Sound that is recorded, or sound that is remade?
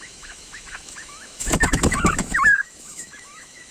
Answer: remade